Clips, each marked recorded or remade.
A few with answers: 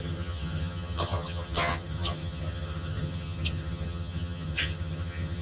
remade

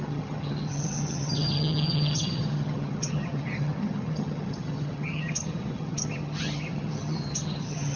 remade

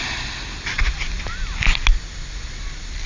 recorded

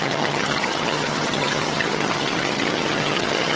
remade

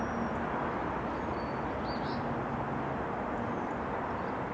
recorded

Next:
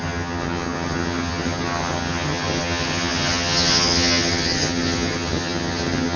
remade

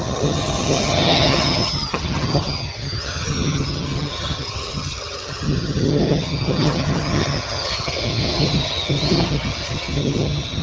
remade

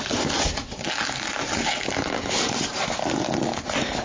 recorded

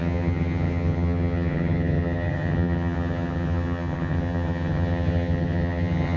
remade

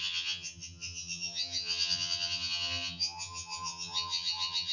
remade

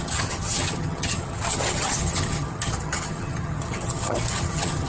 remade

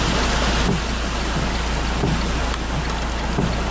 recorded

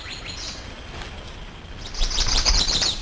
recorded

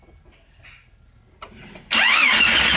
recorded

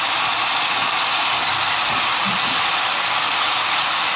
recorded